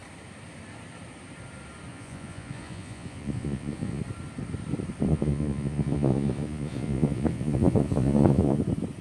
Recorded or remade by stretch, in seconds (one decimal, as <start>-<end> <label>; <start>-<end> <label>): 0.0-1.9 recorded; 1.9-4.0 remade; 4.0-5.1 recorded; 5.1-8.6 remade; 8.6-9.0 recorded